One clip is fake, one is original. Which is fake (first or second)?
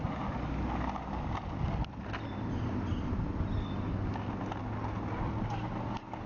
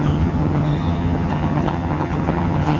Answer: second